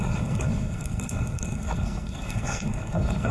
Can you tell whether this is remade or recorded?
remade